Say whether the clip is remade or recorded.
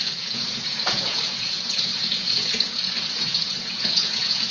remade